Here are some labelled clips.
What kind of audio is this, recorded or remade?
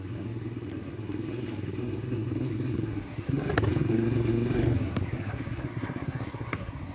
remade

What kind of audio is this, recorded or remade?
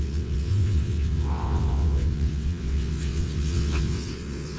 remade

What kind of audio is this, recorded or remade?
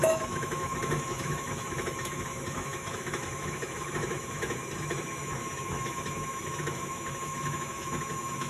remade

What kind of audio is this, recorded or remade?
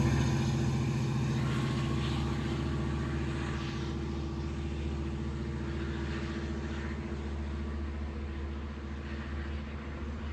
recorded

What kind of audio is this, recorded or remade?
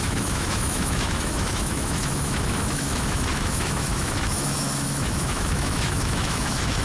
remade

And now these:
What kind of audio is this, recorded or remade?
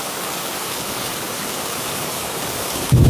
remade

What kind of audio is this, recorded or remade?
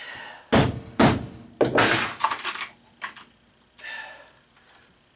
recorded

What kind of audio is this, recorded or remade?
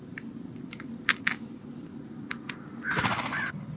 recorded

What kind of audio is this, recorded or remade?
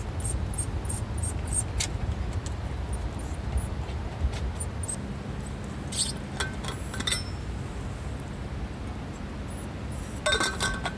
recorded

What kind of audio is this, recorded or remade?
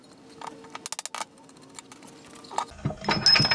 recorded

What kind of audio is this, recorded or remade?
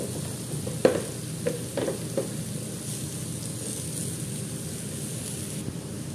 recorded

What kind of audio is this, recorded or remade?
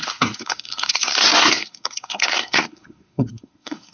remade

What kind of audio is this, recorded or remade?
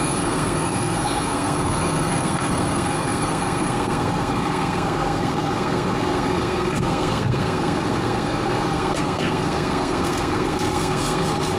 remade